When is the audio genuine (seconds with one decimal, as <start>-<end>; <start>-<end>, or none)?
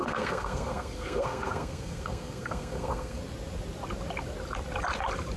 3.2-5.4